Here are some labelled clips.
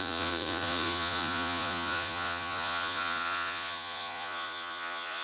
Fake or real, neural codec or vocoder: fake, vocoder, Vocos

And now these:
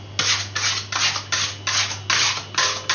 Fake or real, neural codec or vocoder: real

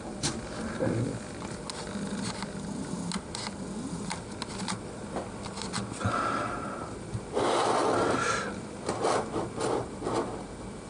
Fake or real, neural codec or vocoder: real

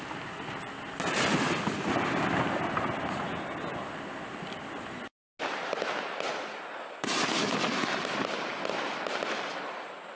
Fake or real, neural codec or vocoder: real